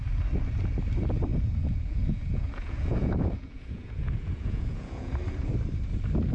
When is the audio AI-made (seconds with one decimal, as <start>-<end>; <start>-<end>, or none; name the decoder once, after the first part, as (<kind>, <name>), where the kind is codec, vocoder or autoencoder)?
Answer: 1.3-5.1 (vocoder, Vocos)